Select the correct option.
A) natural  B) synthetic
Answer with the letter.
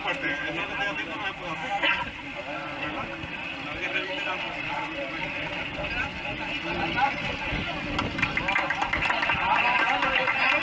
A